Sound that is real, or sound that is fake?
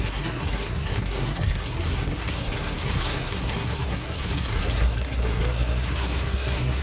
fake